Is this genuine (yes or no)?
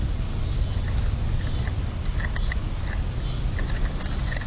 yes